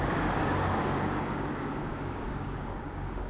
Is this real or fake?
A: fake